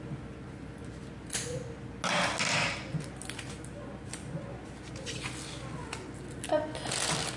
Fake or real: real